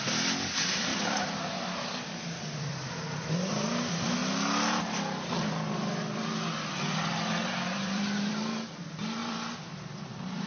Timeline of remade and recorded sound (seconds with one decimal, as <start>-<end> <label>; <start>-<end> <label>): 0.0-4.2 remade; 4.2-5.4 recorded; 5.4-10.5 remade